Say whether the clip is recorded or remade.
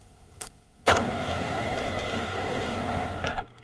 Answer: remade